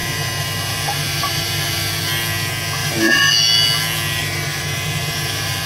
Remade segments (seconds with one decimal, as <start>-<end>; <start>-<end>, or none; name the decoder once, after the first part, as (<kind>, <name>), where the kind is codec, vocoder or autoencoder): 0.0-1.9 (vocoder, BigVGAN v2); 2.8-3.3; 4.2-5.7